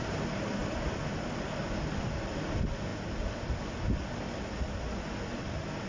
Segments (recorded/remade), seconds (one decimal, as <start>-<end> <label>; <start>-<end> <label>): 0.0-5.9 recorded

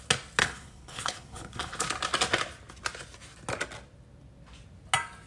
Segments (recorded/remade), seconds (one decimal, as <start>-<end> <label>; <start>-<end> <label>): 0.0-0.4 recorded; 0.4-1.8 remade; 1.8-5.3 recorded

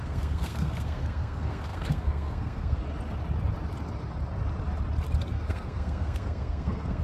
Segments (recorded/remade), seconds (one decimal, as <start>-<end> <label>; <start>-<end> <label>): 0.0-2.8 remade; 2.8-5.3 recorded; 5.3-7.0 remade

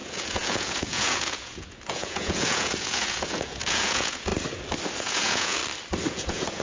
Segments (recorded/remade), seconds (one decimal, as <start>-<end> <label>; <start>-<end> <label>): 0.0-4.3 remade; 4.3-5.0 recorded; 5.0-5.6 remade; 5.6-6.1 recorded; 6.1-6.6 remade

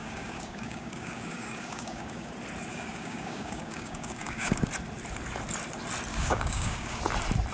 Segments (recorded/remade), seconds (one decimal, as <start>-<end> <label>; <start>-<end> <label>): 0.0-2.3 remade; 2.3-2.7 recorded; 2.7-4.7 remade; 4.7-6.1 recorded; 6.1-7.0 remade; 7.0-7.5 recorded

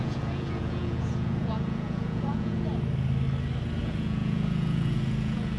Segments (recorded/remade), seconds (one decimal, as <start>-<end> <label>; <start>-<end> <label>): 0.0-2.7 remade; 2.7-3.8 recorded; 3.8-5.6 remade

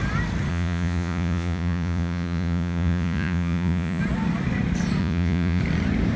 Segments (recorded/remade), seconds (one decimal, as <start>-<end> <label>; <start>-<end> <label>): 0.0-0.5 recorded; 0.5-4.0 remade; 4.0-5.0 recorded; 5.0-5.6 remade; 5.6-6.2 recorded

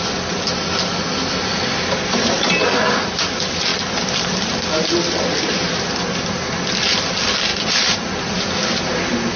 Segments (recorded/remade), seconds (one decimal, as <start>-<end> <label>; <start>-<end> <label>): 0.0-9.4 recorded